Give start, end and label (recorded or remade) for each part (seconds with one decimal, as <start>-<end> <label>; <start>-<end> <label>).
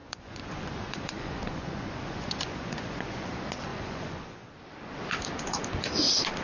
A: 0.0-3.3 remade; 3.3-3.7 recorded; 3.7-4.5 remade; 4.5-6.4 recorded